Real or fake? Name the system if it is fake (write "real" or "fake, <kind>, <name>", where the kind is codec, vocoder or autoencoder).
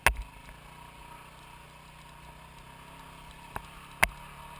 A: real